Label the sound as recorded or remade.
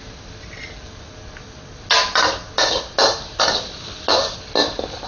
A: recorded